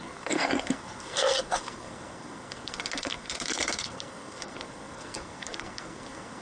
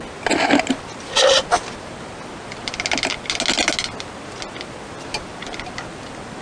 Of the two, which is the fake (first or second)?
first